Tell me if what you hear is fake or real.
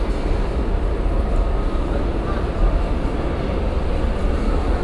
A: real